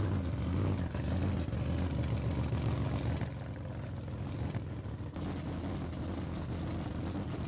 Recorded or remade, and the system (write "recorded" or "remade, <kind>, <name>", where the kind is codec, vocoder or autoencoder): recorded